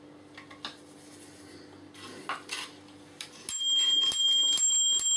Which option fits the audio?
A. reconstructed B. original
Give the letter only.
B